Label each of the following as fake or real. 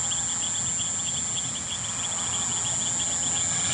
real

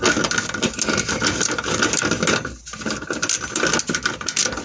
real